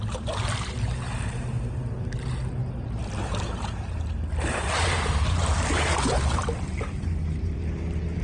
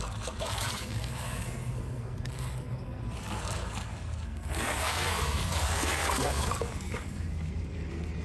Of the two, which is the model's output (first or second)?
second